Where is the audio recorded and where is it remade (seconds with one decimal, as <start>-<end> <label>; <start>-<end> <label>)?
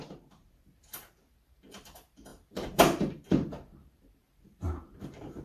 0.0-5.4 remade